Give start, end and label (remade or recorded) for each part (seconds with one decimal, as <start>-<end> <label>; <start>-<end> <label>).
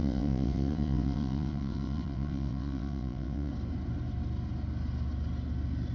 0.0-3.5 remade; 3.5-5.9 recorded